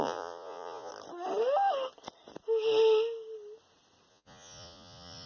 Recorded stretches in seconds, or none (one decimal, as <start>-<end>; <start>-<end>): 0.9-4.1